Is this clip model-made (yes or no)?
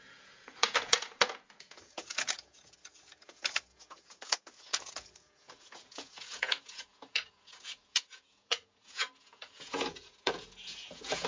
yes